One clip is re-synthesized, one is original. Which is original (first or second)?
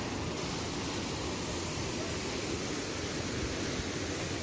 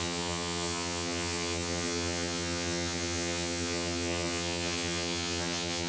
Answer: first